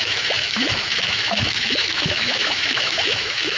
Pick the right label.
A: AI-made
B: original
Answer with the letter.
A